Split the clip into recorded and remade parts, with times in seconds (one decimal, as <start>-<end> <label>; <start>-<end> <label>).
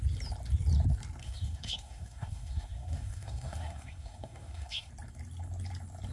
0.0-1.2 recorded; 1.2-4.9 remade; 4.9-6.1 recorded